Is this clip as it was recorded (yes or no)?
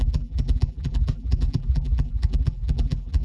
no